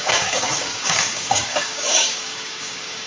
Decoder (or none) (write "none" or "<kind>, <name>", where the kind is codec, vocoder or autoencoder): codec, DAC